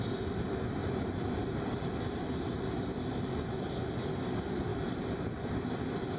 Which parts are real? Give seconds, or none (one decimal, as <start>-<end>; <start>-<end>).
0.0-0.8; 1.9-4.7; 5.7-6.2

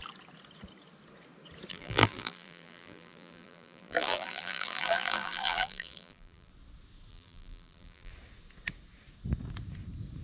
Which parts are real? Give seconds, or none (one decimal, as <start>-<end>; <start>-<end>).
0.0-1.7; 6.5-7.1; 8.1-10.2

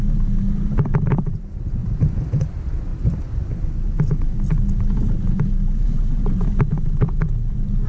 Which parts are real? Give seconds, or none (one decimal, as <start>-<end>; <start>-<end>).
1.8-2.5

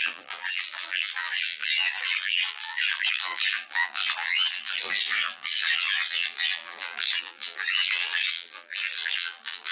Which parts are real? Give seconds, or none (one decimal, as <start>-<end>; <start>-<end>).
none